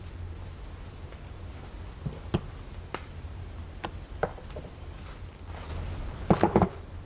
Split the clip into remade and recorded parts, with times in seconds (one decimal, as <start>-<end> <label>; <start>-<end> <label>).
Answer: 0.0-7.1 recorded